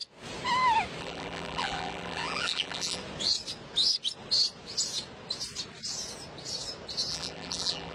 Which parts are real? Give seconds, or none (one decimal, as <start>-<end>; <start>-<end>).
0.0-1.0; 3.0-7.1